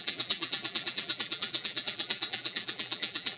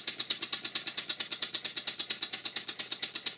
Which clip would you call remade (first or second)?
first